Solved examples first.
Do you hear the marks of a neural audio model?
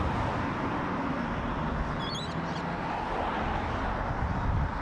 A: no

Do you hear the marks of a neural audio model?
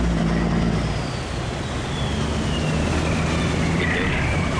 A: no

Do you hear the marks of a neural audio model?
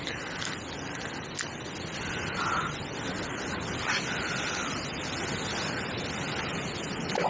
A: no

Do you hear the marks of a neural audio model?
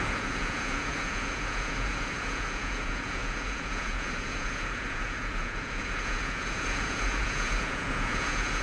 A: yes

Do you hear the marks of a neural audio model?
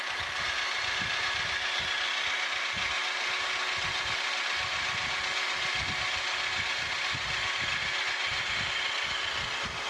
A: no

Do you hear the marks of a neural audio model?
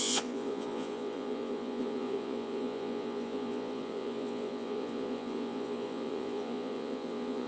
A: yes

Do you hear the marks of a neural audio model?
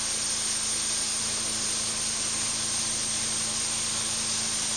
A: no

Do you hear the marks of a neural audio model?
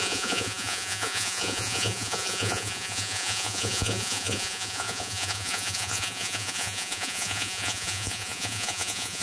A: yes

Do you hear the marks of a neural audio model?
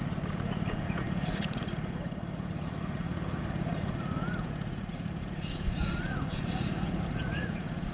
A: yes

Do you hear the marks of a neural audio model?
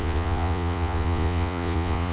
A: yes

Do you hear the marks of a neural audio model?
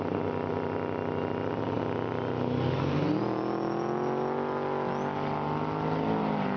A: no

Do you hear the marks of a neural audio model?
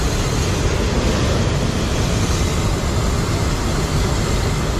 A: no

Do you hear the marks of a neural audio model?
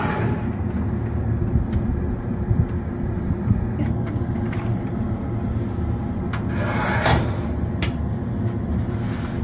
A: no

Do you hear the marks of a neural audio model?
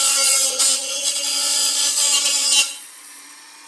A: yes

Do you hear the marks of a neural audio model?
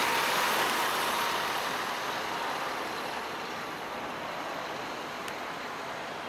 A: no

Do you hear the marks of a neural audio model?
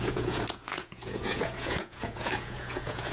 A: yes